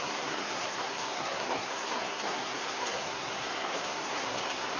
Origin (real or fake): fake